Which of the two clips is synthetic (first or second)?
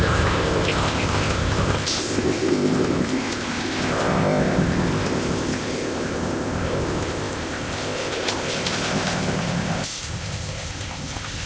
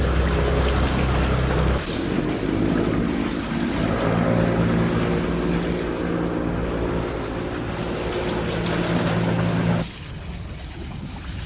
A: first